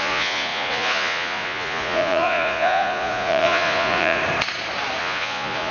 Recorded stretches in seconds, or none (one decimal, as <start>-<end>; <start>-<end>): 4.2-5.0